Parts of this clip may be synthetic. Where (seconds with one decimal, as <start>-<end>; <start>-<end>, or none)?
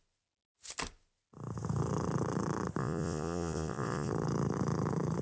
2.8-4.1